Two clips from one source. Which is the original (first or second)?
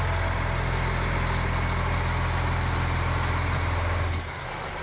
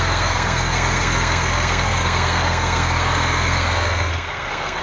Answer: first